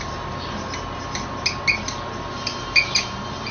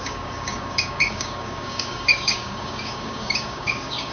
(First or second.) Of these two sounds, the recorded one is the first